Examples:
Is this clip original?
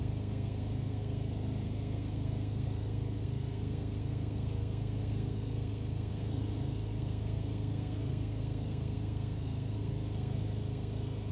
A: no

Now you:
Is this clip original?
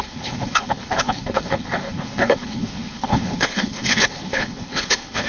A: no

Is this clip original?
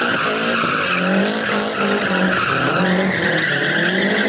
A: yes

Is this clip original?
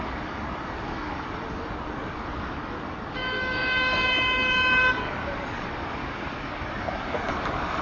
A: no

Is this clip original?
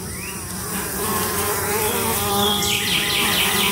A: no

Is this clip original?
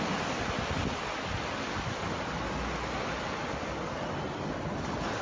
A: yes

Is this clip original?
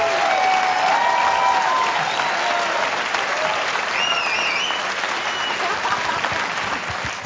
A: yes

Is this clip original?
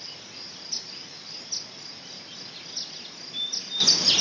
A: yes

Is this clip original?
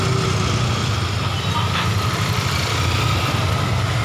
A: yes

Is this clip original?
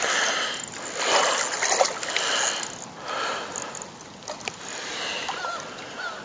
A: yes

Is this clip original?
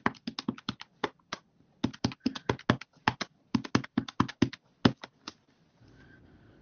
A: yes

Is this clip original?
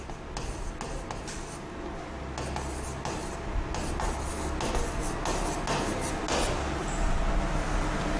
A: yes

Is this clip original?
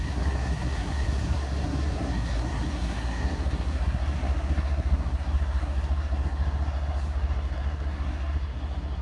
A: no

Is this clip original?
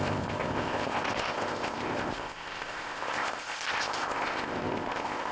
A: no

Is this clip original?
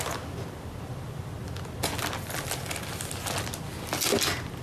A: yes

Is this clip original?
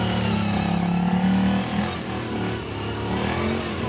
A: yes